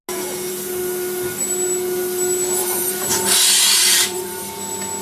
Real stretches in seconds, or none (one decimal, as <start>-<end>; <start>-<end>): 0.0-2.6; 4.5-5.0